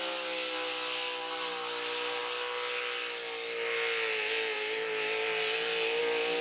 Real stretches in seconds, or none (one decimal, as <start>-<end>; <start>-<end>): 0.0-6.4